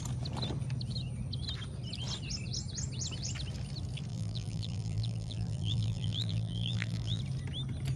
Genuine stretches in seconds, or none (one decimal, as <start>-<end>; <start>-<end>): 0.0-4.1; 7.2-8.0